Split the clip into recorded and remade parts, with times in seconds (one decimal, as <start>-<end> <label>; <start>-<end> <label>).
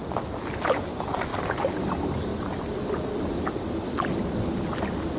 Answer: 0.0-5.2 recorded